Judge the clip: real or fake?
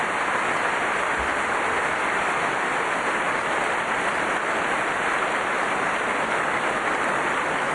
real